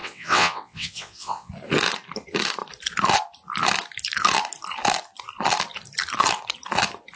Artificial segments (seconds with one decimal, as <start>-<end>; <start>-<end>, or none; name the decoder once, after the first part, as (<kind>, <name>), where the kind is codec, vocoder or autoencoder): 0.0-1.5 (vocoder, WaveNeXt)